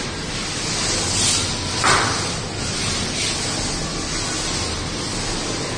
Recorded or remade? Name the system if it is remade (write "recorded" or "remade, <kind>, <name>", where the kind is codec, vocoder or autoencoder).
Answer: recorded